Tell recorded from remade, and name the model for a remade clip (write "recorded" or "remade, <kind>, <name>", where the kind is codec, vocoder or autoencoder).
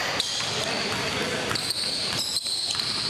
recorded